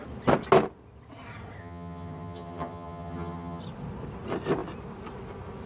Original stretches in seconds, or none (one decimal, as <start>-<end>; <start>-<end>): 0.0-1.6; 3.6-5.7

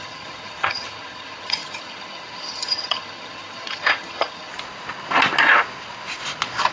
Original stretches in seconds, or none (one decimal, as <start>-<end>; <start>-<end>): 4.5-6.7

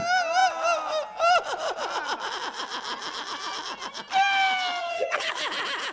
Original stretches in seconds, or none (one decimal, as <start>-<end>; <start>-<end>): 0.0-4.8; 5.4-5.9

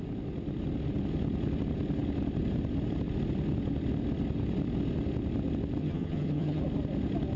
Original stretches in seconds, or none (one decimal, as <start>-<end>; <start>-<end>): 0.0-5.8; 6.6-7.4

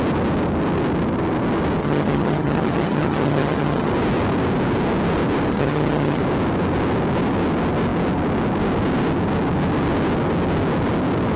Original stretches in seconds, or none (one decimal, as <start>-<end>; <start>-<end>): 0.0-1.8; 3.9-5.5; 6.2-11.4

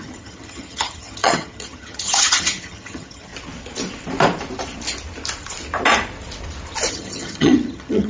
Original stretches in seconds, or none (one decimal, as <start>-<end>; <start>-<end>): 3.3-6.9